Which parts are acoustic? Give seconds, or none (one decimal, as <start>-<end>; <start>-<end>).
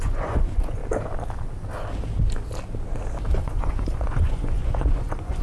0.8-3.4